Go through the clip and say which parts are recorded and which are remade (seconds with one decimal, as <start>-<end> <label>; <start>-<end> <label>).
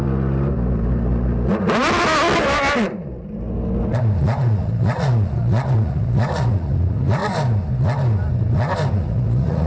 0.0-4.2 recorded; 4.2-7.2 remade; 7.2-8.9 recorded; 8.9-9.7 remade